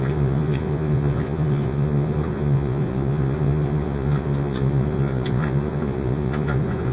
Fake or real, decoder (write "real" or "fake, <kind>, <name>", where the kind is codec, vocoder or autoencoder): fake, vocoder, Vocos